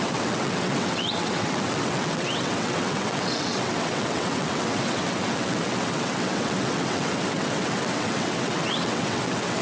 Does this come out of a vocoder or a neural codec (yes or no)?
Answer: yes